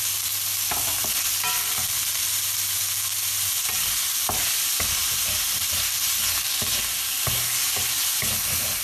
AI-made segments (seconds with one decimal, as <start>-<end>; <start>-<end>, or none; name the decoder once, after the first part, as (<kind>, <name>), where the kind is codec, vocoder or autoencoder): none